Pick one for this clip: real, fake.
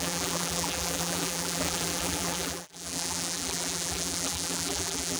fake